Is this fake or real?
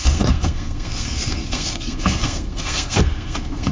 fake